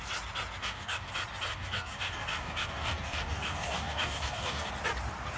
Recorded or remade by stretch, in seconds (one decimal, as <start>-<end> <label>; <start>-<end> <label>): 0.0-0.6 recorded; 0.6-1.1 remade; 1.1-1.5 recorded; 1.5-4.7 remade; 4.7-5.4 recorded